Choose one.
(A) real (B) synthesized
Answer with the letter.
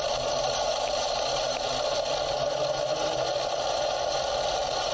A